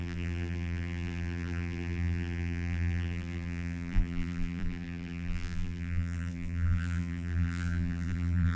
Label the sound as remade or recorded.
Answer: remade